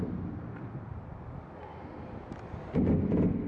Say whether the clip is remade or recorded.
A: recorded